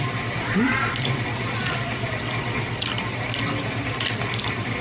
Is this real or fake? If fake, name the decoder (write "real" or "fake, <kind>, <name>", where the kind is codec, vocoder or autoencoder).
real